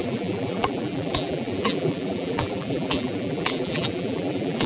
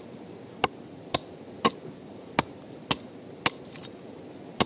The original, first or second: second